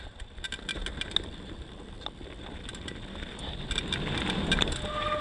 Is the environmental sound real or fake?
real